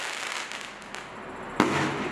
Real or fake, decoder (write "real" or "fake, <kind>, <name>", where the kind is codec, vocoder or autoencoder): real